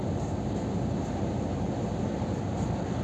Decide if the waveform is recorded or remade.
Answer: recorded